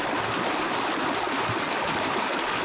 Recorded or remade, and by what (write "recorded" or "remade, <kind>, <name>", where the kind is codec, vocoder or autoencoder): recorded